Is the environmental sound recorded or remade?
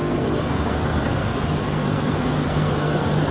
remade